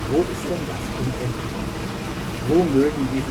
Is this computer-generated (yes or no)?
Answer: no